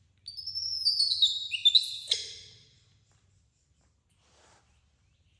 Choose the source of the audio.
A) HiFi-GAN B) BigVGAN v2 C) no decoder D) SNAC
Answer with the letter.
C